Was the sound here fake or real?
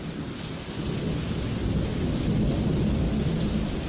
real